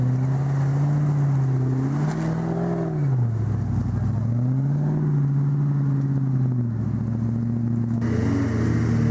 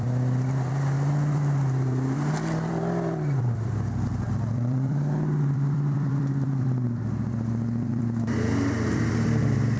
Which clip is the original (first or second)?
first